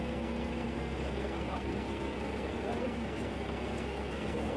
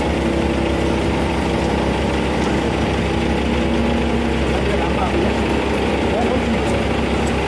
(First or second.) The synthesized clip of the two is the first